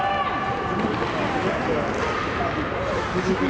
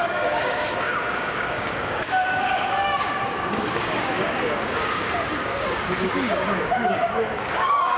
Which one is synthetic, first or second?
second